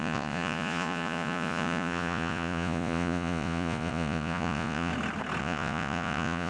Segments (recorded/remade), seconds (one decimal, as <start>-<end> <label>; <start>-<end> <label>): 0.0-4.9 remade; 4.9-5.4 recorded; 5.4-6.5 remade